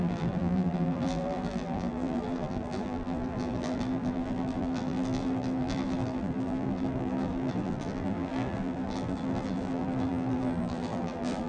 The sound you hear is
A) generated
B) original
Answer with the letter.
A